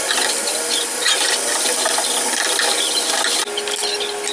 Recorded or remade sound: recorded